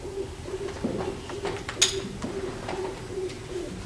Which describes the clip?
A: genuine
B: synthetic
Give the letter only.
A